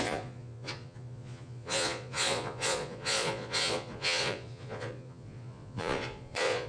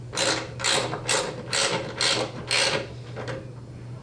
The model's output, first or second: first